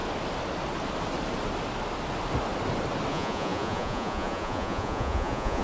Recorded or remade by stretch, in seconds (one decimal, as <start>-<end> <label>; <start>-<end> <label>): 0.0-3.1 recorded; 3.1-5.6 remade